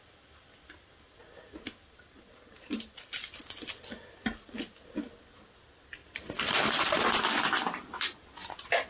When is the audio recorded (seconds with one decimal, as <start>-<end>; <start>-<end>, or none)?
0.0-6.0; 8.1-8.9